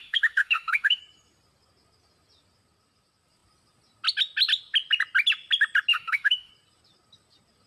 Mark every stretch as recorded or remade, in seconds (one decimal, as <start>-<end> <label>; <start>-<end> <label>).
0.0-1.0 remade; 1.0-5.9 recorded; 5.9-6.5 remade; 6.5-7.7 recorded